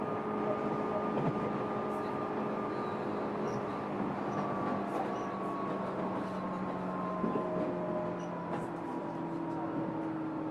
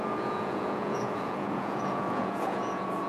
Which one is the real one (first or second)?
first